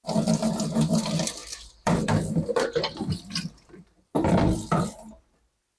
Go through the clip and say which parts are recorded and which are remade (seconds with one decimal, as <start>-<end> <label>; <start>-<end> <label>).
0.0-1.4 recorded; 1.4-4.9 remade; 4.9-5.8 recorded